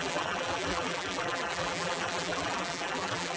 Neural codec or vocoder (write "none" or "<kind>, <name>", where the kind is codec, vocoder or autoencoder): vocoder, BigVGAN v2